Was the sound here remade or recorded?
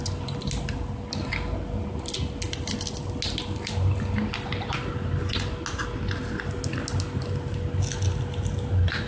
recorded